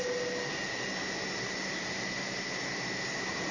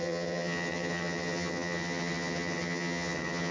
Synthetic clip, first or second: second